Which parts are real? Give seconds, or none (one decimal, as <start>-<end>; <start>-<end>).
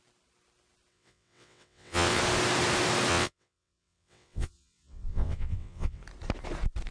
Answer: 0.0-0.9; 2.2-3.1; 6.0-6.9